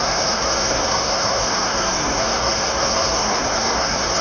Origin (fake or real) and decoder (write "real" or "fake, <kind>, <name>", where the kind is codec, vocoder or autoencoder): fake, codec, SNAC